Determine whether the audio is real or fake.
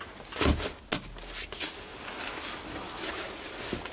real